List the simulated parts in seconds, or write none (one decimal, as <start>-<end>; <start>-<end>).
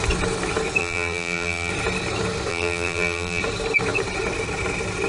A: 0.8-1.7; 2.5-3.4